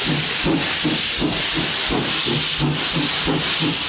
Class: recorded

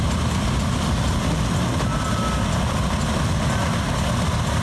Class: recorded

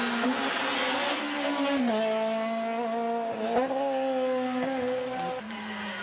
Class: recorded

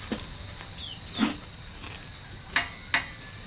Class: recorded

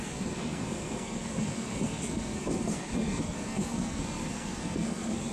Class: remade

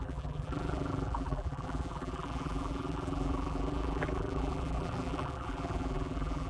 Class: remade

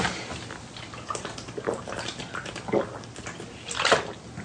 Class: recorded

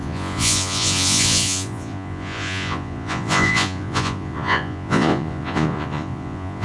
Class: remade